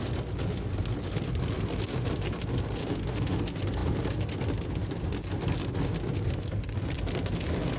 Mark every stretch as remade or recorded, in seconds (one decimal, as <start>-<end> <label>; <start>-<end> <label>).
0.0-2.8 recorded; 2.8-3.4 remade; 3.4-7.8 recorded